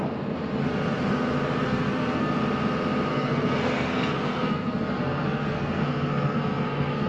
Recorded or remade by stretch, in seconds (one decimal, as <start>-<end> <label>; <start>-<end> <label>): 0.0-1.6 recorded; 1.6-2.4 remade; 2.4-3.1 recorded; 3.1-7.1 remade